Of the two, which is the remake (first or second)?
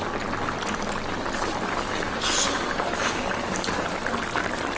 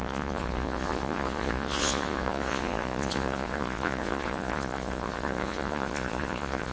second